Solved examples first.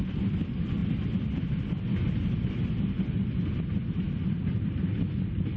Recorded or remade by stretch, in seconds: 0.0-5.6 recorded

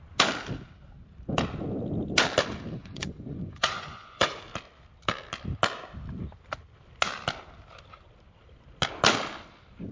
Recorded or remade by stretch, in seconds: 0.0-2.8 recorded; 2.8-4.4 remade; 4.4-9.9 recorded